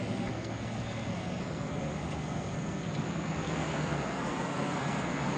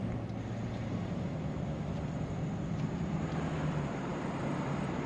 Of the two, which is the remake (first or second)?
first